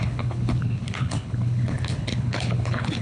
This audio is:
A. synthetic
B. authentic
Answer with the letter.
A